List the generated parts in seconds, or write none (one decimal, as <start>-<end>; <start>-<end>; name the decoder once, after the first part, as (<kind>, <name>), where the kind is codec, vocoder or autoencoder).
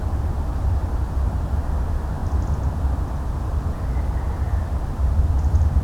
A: 0.0-2.2 (vocoder, BigVGAN v2); 3.4-5.8